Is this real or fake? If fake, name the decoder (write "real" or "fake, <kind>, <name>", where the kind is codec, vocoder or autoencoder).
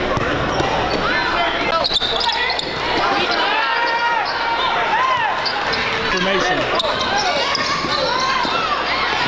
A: real